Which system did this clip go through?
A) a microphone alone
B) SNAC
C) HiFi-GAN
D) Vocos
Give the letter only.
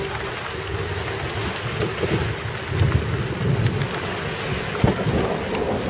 A